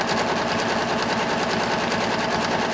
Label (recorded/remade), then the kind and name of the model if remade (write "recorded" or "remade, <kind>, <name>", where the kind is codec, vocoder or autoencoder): recorded